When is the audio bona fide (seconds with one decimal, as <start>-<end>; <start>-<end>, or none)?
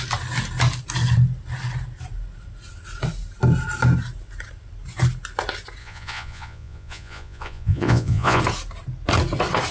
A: 0.0-5.8; 8.4-9.7